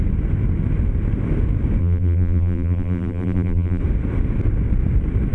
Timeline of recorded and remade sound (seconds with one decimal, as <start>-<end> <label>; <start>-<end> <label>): 0.0-1.8 recorded; 1.8-3.8 remade; 3.8-5.3 recorded